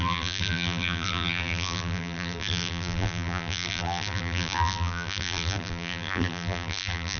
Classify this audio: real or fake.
fake